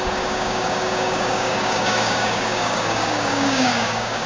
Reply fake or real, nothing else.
fake